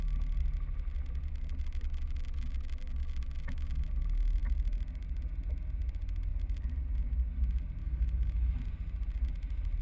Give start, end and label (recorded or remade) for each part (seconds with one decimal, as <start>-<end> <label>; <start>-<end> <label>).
0.0-7.8 recorded; 7.8-8.6 remade; 8.6-9.8 recorded